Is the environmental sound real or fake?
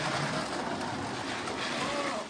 real